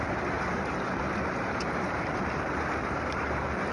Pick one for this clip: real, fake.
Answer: fake